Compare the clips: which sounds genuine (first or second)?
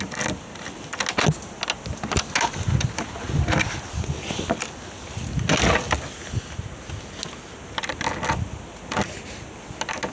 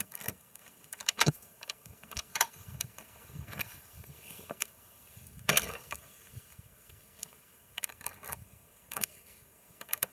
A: first